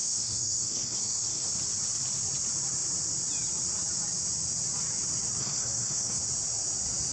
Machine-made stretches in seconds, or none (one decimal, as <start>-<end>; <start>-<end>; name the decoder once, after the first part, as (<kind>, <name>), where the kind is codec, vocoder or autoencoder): 0.0-1.5 (codec, SNAC); 5.4-6.2